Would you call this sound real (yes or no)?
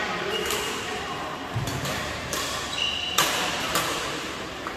no